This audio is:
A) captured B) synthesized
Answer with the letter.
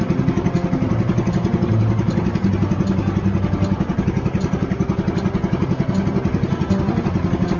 A